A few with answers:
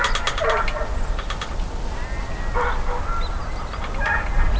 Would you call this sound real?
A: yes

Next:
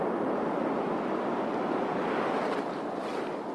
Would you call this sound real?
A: yes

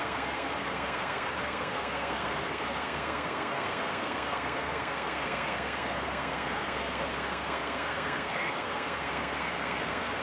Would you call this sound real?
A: no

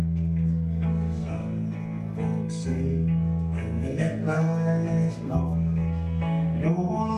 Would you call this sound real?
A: no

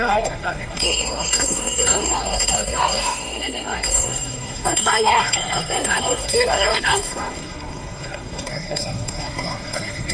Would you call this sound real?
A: no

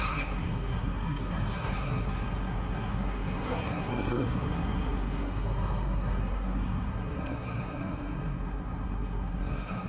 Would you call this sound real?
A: no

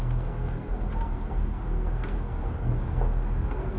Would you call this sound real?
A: no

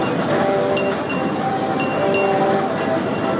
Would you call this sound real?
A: yes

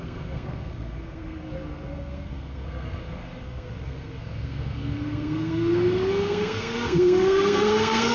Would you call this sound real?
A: no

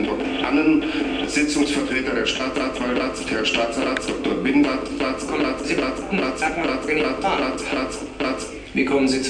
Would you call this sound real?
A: yes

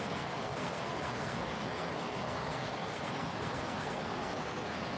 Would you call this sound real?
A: no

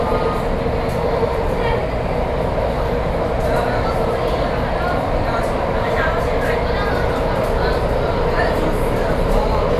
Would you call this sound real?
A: yes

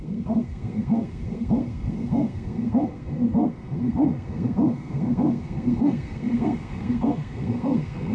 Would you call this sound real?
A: no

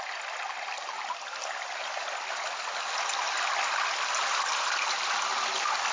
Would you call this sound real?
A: yes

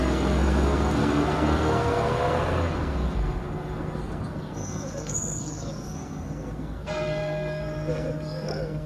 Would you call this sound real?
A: no